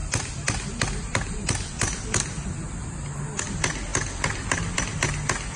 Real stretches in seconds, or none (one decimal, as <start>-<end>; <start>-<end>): 0.0-5.6